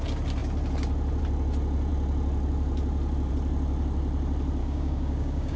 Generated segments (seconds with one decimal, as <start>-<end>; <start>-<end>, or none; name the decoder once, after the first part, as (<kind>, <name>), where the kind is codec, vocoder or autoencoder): 4.6-5.6 (codec, DAC)